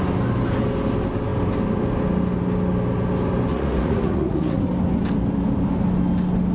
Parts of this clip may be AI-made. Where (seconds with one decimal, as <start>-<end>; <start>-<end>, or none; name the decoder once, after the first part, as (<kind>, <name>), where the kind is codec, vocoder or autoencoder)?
3.5-4.6 (vocoder, Vocos)